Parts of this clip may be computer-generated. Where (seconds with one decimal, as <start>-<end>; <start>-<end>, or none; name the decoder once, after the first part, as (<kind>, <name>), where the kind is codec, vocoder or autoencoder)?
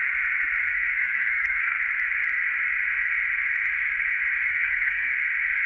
0.6-1.8 (codec, SNAC); 4.5-5.2